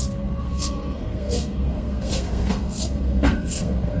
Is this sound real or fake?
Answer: fake